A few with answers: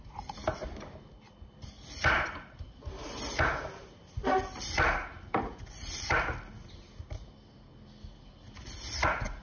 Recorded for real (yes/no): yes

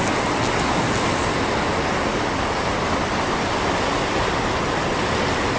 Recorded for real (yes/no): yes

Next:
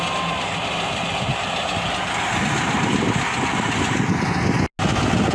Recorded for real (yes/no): yes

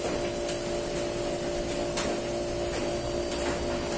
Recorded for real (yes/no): yes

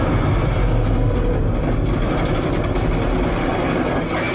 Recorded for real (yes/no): yes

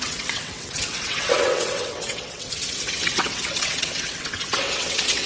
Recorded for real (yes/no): no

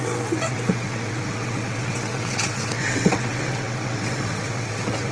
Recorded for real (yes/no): no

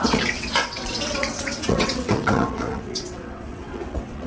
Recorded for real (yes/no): no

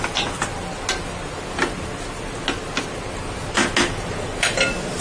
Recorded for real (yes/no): yes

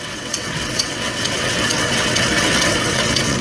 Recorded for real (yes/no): no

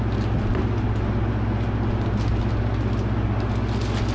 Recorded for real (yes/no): yes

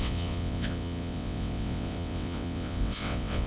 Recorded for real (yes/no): no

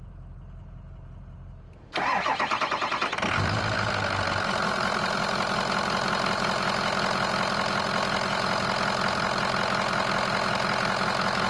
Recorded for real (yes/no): yes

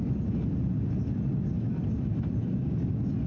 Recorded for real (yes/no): yes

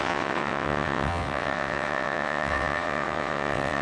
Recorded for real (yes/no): no